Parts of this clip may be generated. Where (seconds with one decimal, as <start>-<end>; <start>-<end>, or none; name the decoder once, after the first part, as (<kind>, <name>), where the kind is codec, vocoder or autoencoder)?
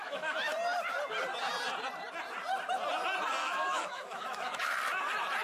0.0-0.5 (autoencoder, DAC-VAE); 3.4-4.7